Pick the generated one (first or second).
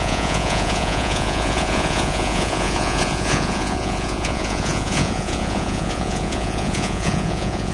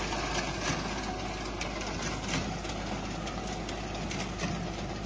first